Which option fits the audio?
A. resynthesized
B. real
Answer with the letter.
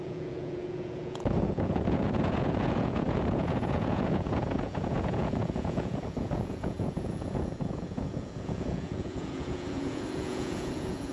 A